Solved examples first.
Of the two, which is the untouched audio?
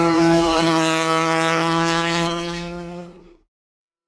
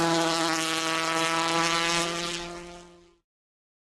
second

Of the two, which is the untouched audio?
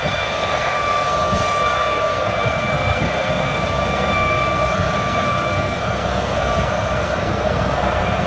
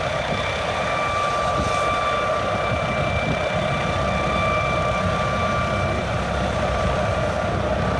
second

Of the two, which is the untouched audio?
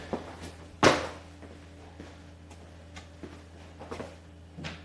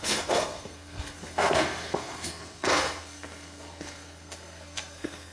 first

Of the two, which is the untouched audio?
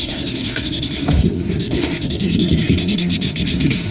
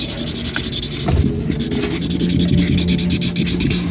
second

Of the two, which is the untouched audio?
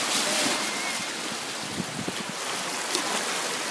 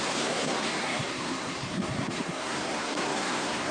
first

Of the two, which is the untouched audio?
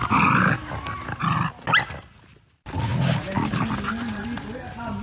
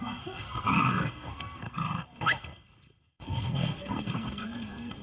first